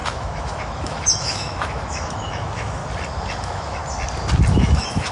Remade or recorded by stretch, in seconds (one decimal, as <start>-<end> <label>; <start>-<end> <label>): 0.0-2.8 remade; 2.8-3.4 recorded; 3.4-3.8 remade; 3.8-4.5 recorded; 4.5-5.1 remade